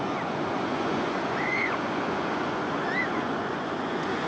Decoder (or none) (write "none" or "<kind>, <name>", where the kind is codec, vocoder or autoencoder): vocoder, Vocos